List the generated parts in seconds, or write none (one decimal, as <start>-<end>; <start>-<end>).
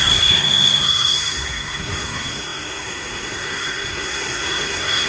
0.0-5.1